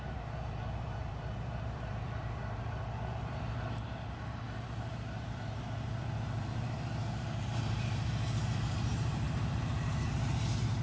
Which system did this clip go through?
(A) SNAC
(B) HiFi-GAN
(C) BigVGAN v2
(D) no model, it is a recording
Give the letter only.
C